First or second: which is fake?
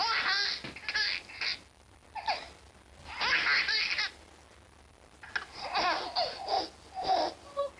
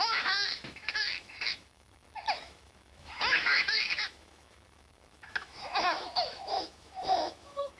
second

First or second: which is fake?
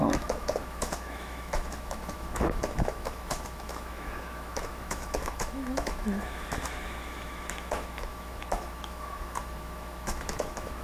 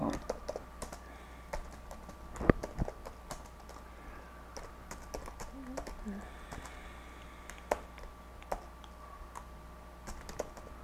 first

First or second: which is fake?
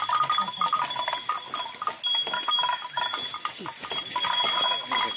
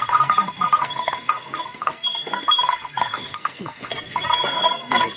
second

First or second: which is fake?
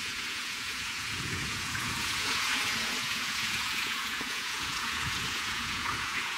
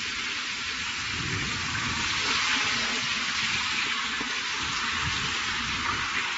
first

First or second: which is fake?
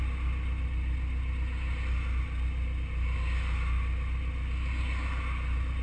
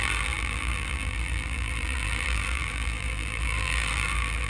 second